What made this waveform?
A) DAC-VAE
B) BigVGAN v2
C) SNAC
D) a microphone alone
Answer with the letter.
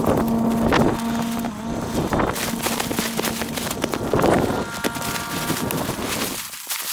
D